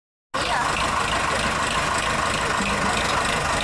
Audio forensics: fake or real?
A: real